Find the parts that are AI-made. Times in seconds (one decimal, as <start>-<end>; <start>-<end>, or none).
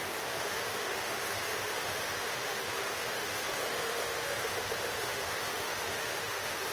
0.0-6.7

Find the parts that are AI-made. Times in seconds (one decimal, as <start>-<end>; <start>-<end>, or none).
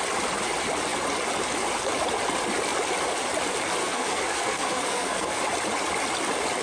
3.8-5.4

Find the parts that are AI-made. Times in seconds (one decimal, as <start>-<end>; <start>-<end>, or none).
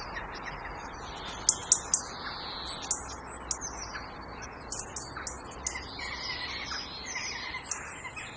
none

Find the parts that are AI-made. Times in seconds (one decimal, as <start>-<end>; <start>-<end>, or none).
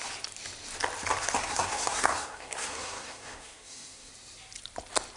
1.4-4.1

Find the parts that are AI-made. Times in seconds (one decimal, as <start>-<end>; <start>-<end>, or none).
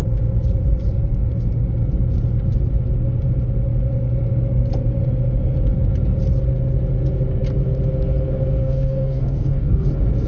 8.6-9.9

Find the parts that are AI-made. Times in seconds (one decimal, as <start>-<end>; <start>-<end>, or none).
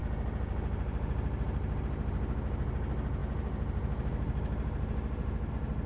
none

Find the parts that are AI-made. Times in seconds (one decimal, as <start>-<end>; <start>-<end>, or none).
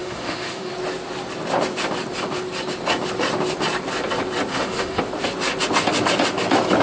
0.0-0.7; 4.5-5.0